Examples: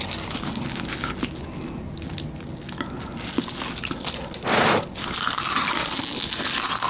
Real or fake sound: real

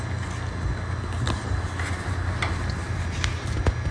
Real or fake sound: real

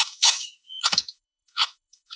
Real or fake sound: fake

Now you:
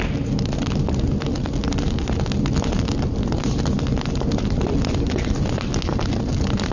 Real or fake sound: real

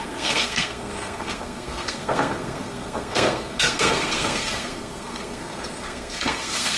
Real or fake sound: fake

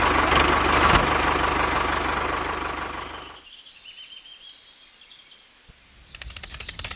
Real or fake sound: real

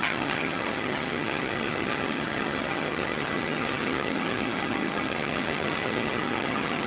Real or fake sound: fake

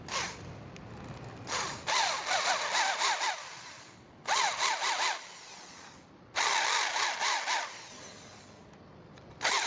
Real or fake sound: real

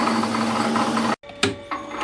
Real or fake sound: real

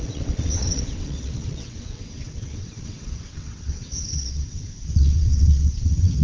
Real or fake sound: fake